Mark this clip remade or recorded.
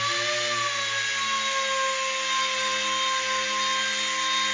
recorded